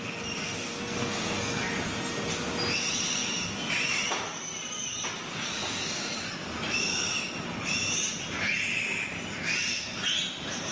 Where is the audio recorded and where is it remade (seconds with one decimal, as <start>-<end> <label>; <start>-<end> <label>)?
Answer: 0.0-0.4 recorded; 0.4-1.7 remade; 1.7-10.7 recorded

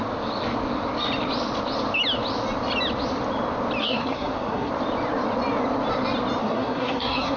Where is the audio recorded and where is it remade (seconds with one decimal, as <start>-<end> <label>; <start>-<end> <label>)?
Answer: 0.0-3.8 recorded; 3.8-4.7 remade; 4.7-6.4 recorded; 6.4-7.4 remade